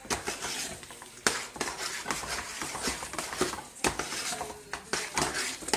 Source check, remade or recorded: recorded